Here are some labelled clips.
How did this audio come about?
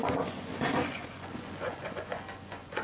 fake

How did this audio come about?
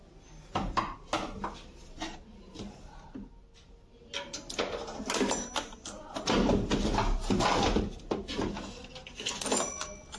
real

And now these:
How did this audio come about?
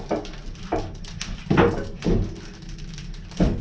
real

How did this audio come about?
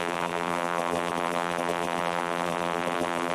fake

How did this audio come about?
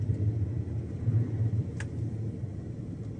real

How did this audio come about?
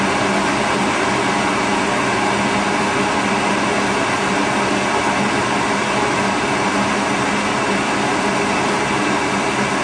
real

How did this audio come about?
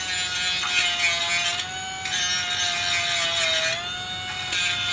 real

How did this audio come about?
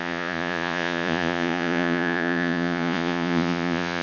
fake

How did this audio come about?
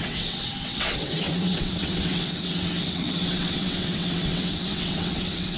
fake